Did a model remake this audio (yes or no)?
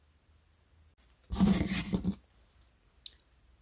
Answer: no